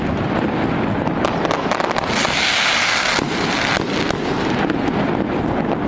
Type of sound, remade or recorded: recorded